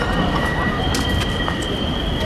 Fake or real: real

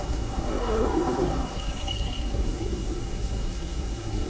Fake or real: fake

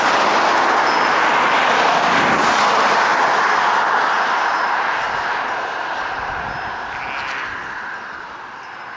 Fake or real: real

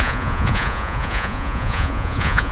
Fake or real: fake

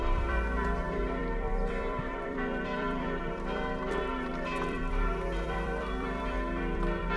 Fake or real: fake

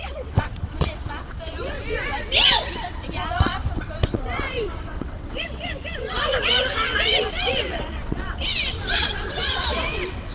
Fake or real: fake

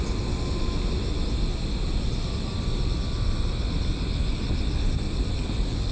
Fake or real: real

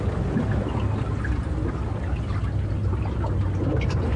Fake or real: real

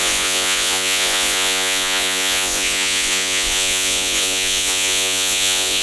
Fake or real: fake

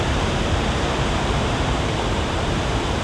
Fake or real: fake